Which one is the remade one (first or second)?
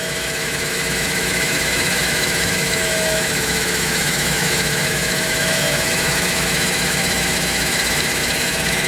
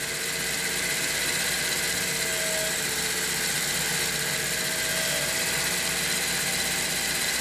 first